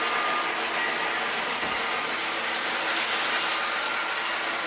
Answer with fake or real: real